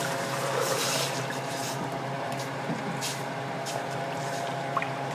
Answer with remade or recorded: remade